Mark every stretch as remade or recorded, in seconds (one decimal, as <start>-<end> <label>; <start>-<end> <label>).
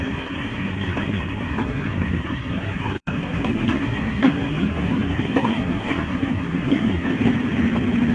0.0-7.1 remade; 7.1-8.1 recorded